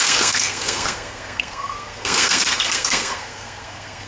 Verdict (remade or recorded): remade